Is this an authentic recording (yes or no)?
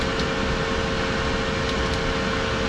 yes